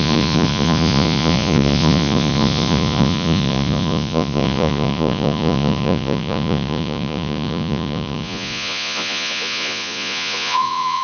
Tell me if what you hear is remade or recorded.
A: remade